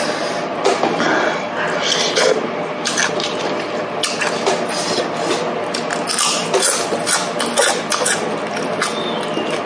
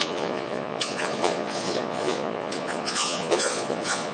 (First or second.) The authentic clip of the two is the first